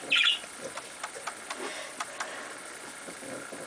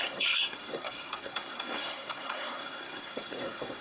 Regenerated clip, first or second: second